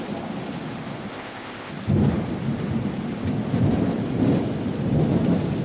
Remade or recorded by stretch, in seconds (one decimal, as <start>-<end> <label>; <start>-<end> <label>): 0.0-1.1 recorded; 1.1-1.7 remade; 1.7-5.6 recorded